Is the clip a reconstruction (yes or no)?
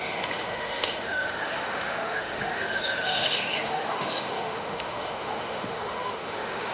yes